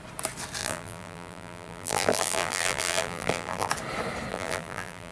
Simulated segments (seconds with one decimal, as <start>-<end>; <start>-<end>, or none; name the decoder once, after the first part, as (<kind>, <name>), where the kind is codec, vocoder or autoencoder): 0.6-3.7 (vocoder, BigVGAN v2); 4.3-5.1